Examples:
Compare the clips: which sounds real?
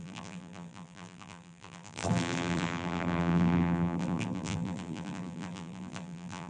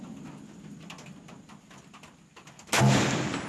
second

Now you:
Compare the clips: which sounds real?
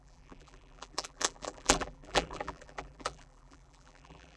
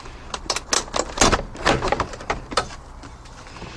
second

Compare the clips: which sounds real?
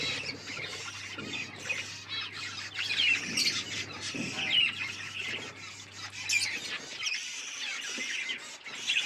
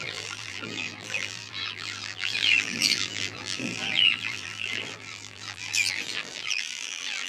first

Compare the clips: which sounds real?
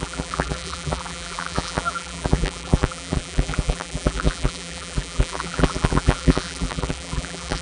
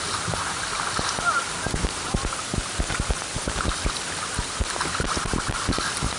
second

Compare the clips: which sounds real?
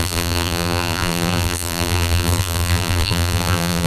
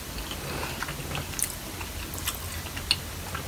second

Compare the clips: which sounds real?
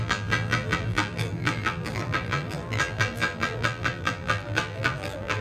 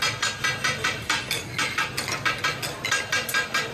second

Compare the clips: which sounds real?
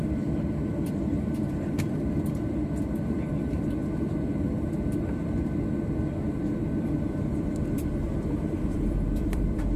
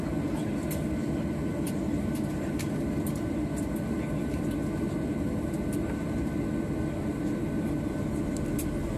second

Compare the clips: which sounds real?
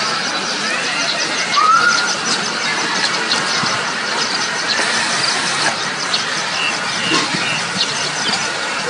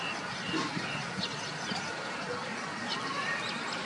first